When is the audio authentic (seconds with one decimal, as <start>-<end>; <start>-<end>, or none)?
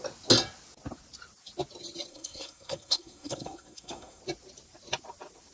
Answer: 0.0-2.1; 4.2-5.5